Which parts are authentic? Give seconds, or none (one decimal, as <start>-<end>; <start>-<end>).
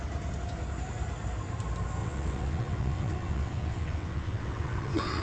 0.0-2.0